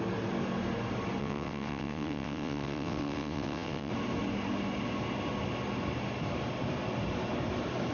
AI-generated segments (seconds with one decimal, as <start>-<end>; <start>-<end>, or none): 1.2-3.9